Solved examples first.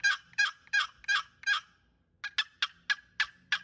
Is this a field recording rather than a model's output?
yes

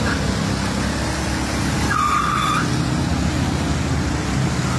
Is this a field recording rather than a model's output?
yes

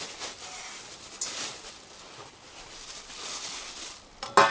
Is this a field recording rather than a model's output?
yes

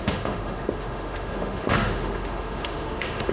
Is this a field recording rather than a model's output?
no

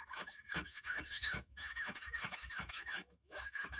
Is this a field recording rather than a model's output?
no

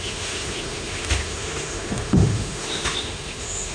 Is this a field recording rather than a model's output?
no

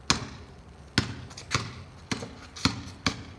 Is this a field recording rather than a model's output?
yes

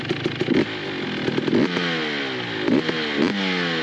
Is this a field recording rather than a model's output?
yes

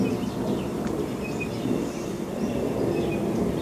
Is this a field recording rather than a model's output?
yes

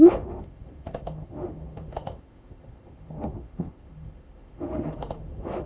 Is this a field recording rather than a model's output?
no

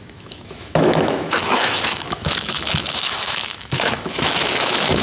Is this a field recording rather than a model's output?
no